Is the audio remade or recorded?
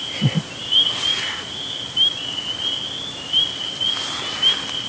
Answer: recorded